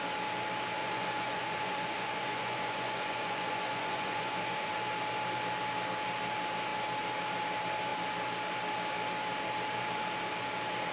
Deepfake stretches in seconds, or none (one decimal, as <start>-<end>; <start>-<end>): 0.8-4.7